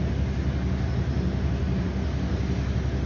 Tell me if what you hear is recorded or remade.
recorded